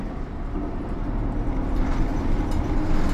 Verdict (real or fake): real